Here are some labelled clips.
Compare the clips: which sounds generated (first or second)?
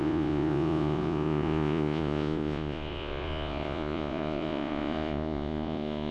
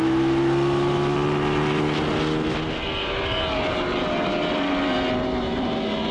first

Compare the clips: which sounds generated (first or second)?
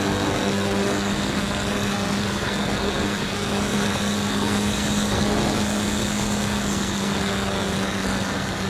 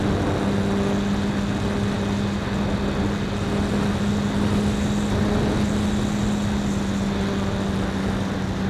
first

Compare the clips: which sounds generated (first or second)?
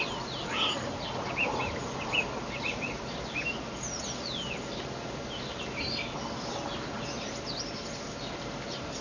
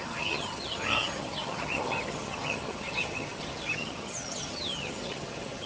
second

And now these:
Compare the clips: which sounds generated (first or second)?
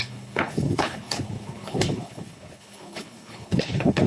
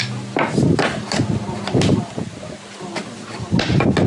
first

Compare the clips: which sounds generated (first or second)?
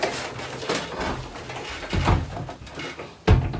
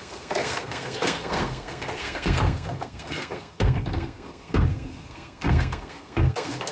second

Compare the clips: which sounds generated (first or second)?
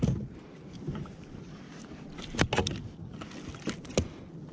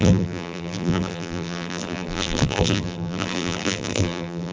second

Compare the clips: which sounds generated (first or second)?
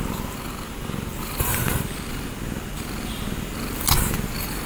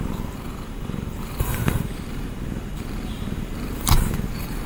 second